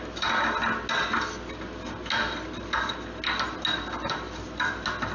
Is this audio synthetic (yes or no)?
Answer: no